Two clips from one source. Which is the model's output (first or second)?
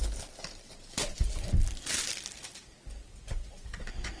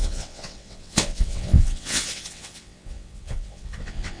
second